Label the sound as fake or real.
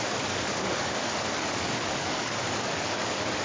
fake